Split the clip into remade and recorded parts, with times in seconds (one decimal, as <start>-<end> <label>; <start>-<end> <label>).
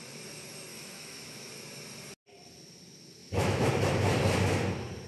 0.0-0.7 recorded; 0.7-1.5 remade; 1.5-3.2 recorded; 3.2-3.7 remade; 3.7-5.1 recorded